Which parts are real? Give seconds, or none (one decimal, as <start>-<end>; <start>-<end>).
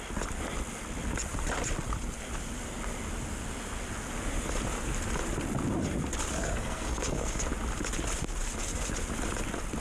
0.0-6.4; 7.4-9.8